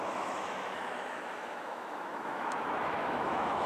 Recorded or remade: remade